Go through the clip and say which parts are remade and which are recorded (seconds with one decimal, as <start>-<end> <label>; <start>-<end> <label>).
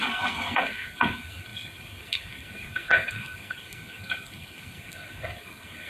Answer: 0.0-5.9 remade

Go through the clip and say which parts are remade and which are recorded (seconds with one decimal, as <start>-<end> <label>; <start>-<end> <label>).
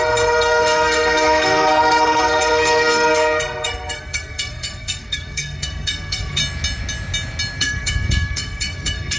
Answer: 0.0-6.4 remade; 6.4-7.6 recorded; 7.6-9.2 remade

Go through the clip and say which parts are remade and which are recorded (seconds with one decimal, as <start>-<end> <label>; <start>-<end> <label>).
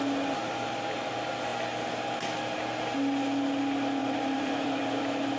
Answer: 0.0-4.0 recorded; 4.0-5.0 remade; 5.0-5.4 recorded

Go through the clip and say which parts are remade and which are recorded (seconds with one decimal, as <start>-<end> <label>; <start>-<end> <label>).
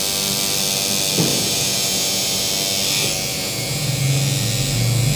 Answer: 0.0-1.3 recorded; 1.3-2.5 remade; 2.5-3.3 recorded; 3.3-4.0 remade; 4.0-5.1 recorded